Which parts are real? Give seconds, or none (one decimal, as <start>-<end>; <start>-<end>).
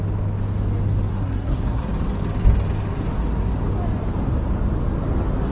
0.0-1.1; 1.9-5.5